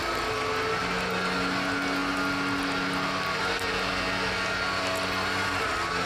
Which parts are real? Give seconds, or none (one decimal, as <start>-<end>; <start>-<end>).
0.0-6.1